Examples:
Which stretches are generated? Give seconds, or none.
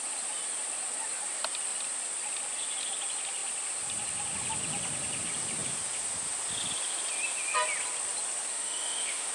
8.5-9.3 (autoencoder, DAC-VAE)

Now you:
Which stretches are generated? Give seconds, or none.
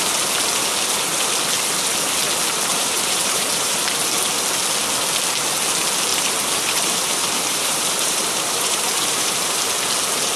2.7-3.8 (vocoder, BigVGAN v2); 6.1-9.7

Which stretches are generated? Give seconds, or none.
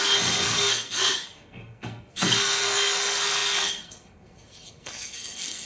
0.0-5.7 (codec, SNAC)